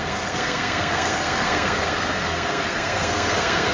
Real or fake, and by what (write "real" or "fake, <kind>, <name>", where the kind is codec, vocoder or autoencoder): fake, codec, SNAC